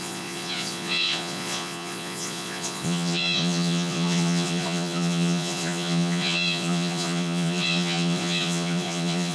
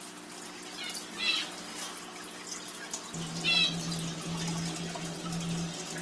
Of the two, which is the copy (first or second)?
first